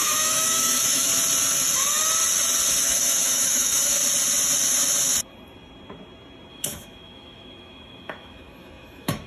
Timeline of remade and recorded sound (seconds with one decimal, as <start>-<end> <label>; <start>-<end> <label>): 0.0-1.1 remade; 1.1-2.8 recorded; 2.8-4.0 remade; 4.0-6.5 recorded; 6.5-9.3 remade